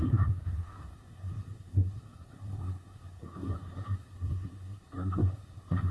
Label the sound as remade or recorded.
remade